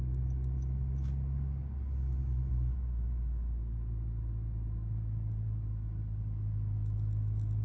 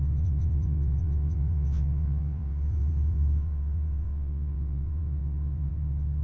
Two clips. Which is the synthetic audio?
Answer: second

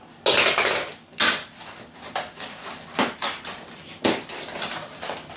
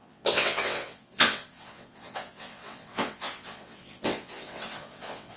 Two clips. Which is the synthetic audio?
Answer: second